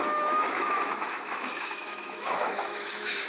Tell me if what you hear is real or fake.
fake